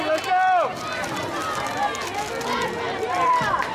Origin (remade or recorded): recorded